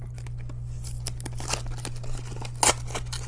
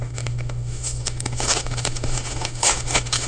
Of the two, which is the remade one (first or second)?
second